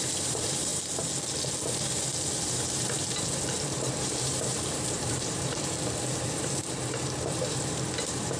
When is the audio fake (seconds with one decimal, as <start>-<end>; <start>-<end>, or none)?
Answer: 0.0-0.7; 2.5-8.4